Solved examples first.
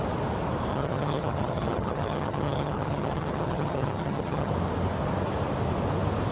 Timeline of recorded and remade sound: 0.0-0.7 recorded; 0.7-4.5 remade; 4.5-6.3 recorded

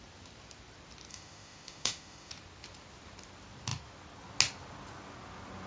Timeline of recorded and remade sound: 0.0-1.1 recorded; 1.1-2.3 remade; 2.3-5.7 recorded

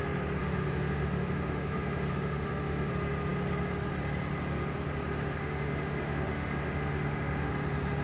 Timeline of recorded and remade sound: 0.0-0.4 recorded; 0.4-2.9 remade; 2.9-5.4 recorded; 5.4-7.5 remade; 7.5-8.0 recorded

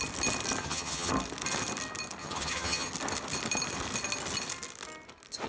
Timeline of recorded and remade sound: 0.0-0.6 recorded; 0.6-1.1 remade; 1.1-2.2 recorded; 2.2-2.9 remade; 2.9-5.5 recorded

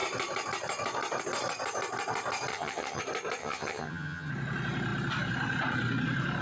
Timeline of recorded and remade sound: 0.0-2.5 recorded; 2.5-3.0 remade; 3.0-3.4 recorded; 3.4-4.3 remade; 4.3-6.4 recorded

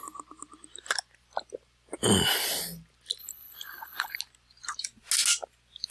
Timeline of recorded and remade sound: 0.0-3.2 recorded; 3.2-4.2 remade; 4.2-5.9 recorded

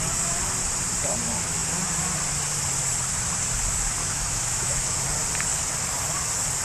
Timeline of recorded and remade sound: 0.0-4.0 recorded; 4.0-5.0 remade; 5.0-6.6 recorded

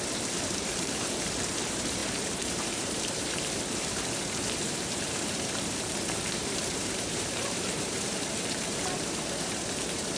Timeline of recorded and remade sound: 0.0-10.2 remade